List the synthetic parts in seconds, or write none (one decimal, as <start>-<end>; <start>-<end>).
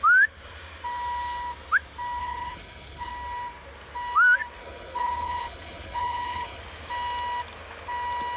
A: 2.2-3.1; 4.6-6.6